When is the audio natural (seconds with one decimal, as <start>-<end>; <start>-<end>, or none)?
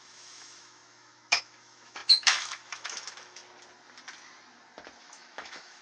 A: 3.4-5.0